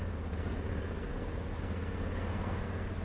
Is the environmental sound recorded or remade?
remade